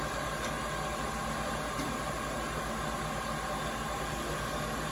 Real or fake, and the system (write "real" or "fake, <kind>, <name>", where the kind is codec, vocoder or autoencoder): real